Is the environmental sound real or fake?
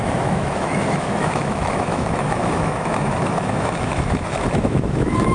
fake